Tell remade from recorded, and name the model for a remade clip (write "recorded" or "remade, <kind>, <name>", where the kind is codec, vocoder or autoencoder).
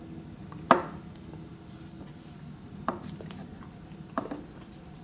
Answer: recorded